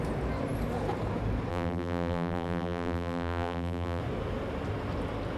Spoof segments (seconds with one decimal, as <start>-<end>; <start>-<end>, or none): 1.5-4.0